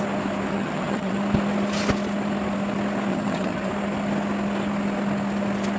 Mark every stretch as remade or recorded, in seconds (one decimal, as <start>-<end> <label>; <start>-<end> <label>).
0.0-0.5 recorded; 0.5-1.2 remade; 1.2-3.1 recorded; 3.1-3.7 remade; 3.7-5.8 recorded